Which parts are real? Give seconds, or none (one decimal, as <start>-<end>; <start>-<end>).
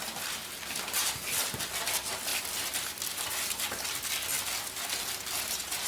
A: 0.0-5.9